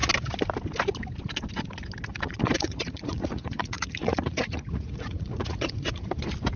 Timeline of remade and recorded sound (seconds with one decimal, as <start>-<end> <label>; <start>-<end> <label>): 0.0-2.1 recorded; 2.1-6.1 remade; 6.1-6.6 recorded